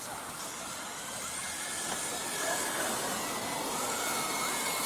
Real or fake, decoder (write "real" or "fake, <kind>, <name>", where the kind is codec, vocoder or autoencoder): real